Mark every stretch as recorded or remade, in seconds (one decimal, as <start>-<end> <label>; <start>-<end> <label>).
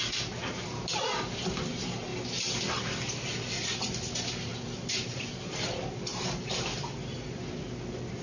0.0-6.1 recorded; 6.1-7.4 remade; 7.4-8.2 recorded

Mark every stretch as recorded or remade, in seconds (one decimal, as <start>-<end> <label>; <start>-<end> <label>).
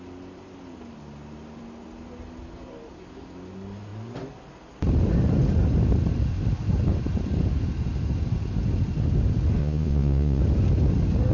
0.0-9.6 recorded; 9.6-10.4 remade; 10.4-11.3 recorded